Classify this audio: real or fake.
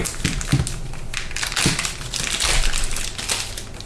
real